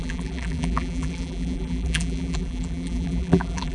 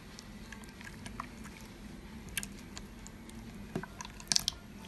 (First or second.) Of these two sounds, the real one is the second